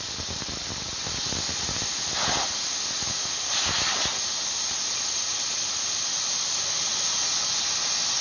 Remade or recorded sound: recorded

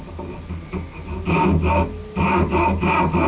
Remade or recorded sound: recorded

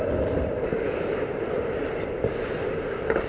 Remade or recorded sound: recorded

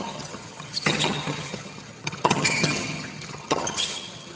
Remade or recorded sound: remade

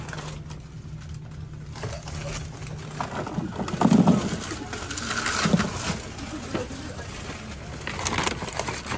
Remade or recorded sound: recorded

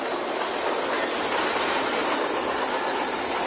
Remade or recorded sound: recorded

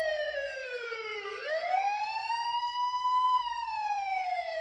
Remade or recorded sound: remade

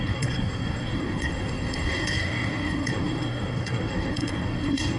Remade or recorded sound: remade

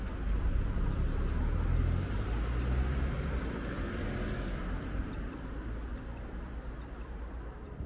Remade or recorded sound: recorded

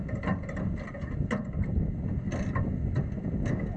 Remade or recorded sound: recorded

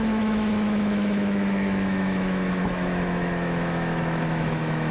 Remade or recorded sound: remade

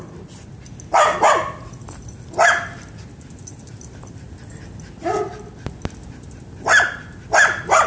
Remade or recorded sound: recorded